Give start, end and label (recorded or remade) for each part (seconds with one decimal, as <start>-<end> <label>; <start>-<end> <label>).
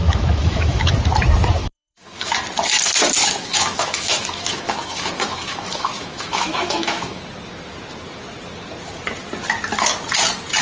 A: 0.0-0.9 remade; 0.9-1.6 recorded; 1.6-2.3 remade; 2.3-3.2 recorded; 3.2-7.2 remade; 7.2-10.6 recorded